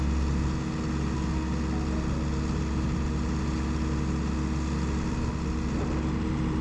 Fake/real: real